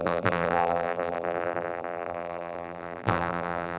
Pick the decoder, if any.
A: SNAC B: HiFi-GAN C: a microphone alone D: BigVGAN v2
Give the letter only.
D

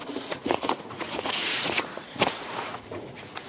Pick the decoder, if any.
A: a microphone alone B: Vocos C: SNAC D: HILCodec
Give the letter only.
B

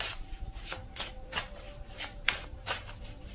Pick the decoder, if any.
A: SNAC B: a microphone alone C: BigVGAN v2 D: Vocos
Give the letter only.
C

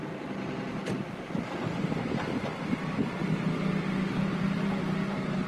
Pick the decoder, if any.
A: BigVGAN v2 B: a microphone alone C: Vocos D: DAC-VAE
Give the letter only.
B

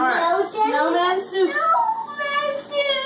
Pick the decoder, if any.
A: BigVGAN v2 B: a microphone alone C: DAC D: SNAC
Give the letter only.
B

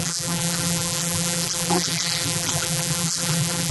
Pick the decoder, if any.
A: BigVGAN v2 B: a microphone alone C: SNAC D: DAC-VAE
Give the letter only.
A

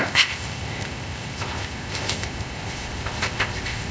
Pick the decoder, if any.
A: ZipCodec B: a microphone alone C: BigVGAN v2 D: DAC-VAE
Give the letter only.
A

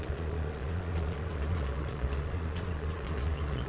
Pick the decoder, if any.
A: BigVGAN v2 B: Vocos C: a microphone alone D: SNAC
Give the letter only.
B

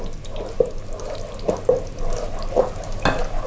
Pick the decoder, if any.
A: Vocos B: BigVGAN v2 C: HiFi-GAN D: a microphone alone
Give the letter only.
D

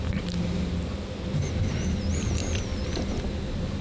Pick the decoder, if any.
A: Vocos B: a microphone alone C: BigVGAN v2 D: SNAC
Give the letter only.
B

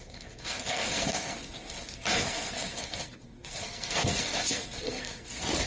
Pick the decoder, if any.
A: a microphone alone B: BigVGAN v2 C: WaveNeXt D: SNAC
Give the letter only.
D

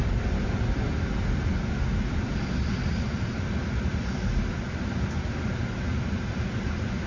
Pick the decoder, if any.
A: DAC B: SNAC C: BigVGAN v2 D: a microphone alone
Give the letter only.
C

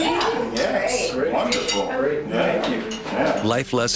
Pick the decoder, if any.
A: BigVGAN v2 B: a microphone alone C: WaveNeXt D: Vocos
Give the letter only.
B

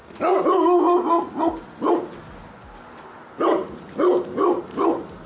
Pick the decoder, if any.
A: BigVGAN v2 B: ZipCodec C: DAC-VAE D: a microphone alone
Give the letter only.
D